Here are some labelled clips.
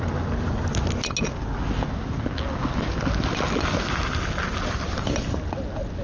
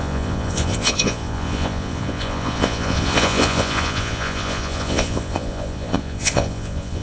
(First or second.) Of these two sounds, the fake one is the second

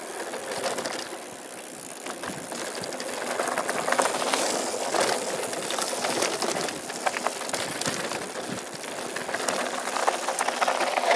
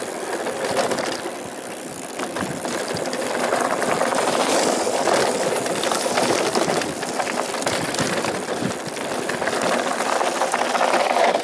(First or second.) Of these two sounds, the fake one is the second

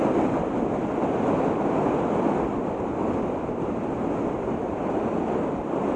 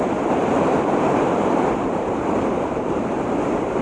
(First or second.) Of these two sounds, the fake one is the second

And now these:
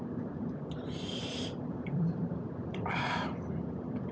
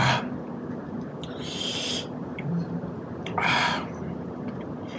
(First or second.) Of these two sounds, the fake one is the first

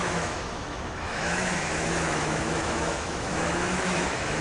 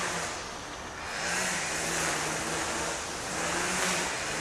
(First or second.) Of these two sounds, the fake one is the first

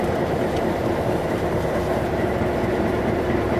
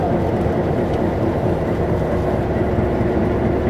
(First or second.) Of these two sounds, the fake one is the first